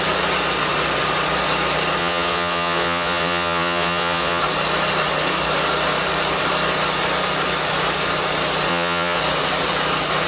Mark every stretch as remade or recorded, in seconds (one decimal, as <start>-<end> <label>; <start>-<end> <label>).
0.0-2.0 recorded; 2.0-4.4 remade; 4.4-8.7 recorded; 8.7-9.2 remade; 9.2-10.3 recorded